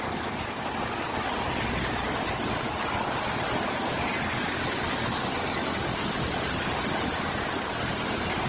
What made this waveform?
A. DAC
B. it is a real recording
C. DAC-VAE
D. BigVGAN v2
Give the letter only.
B